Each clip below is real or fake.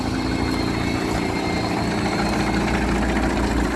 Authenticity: real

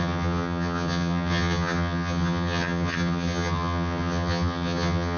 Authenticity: fake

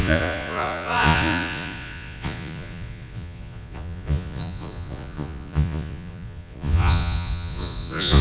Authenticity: fake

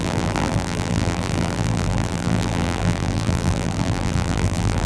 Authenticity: fake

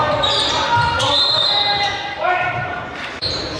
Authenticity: fake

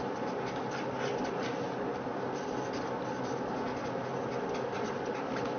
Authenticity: real